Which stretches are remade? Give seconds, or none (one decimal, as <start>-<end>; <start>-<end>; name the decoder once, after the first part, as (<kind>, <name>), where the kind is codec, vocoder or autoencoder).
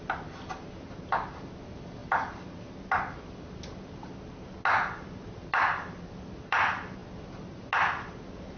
none